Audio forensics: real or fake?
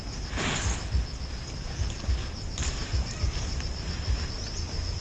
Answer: real